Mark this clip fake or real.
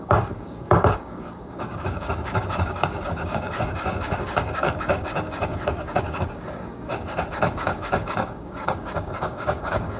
fake